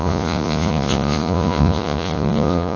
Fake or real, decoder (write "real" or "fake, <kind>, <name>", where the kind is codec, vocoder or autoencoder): fake, vocoder, Vocos